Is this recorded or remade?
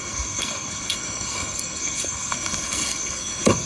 remade